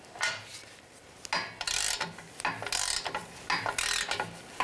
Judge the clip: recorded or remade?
recorded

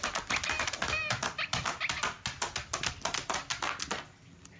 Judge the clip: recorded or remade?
recorded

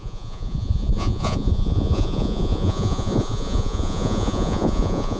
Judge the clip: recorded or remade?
remade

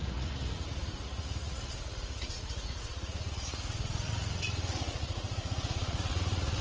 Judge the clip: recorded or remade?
remade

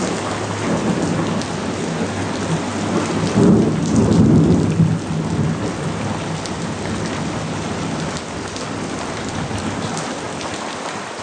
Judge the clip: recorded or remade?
recorded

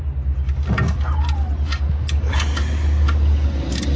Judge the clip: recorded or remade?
recorded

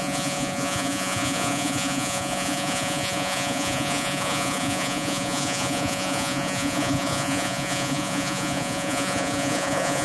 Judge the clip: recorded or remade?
remade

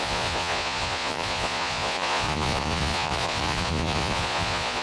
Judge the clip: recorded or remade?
remade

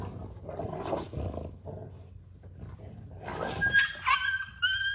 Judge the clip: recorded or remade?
recorded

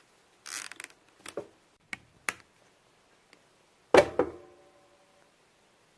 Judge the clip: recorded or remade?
recorded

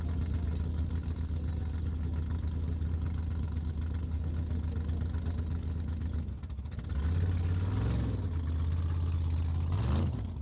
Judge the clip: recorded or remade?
recorded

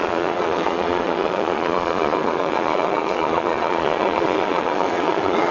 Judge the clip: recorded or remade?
remade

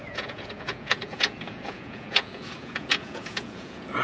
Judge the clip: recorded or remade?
remade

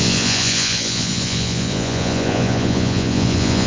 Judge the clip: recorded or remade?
remade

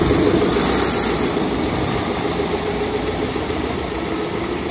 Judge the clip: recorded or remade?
recorded